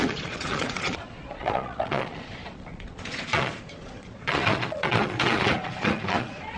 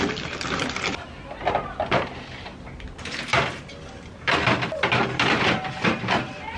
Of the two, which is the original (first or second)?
second